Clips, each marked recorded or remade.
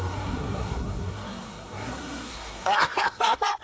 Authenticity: remade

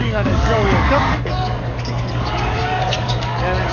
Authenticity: remade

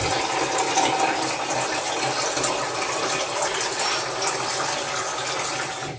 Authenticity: recorded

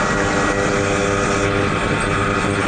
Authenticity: recorded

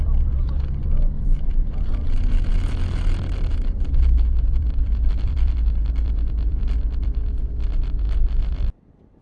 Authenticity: remade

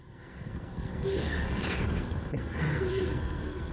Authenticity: remade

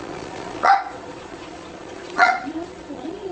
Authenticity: remade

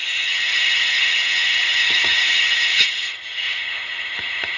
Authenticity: remade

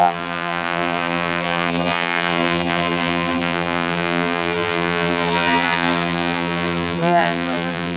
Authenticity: remade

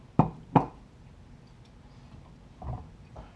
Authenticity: recorded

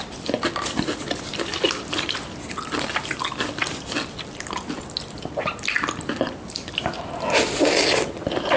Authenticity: recorded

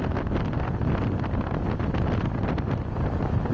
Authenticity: recorded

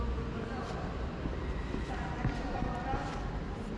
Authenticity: recorded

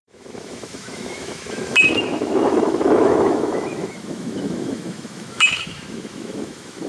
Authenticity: remade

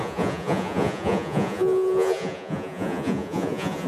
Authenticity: remade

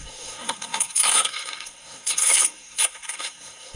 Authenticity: remade